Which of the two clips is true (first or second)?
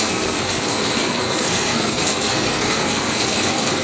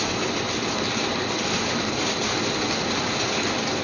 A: second